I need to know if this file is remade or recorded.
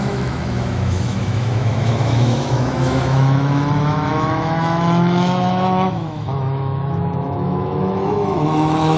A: remade